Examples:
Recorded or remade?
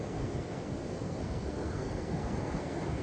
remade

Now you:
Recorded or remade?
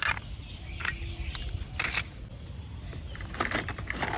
recorded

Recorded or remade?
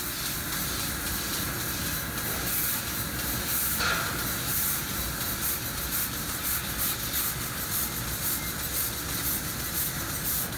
recorded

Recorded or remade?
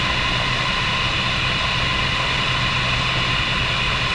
recorded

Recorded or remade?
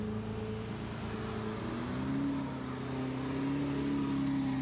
recorded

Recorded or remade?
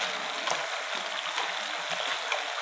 recorded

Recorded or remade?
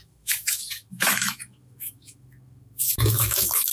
remade